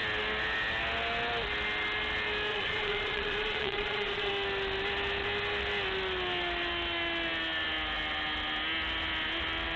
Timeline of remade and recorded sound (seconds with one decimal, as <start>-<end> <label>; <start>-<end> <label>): 0.0-2.5 recorded; 2.5-4.3 remade; 4.3-9.8 recorded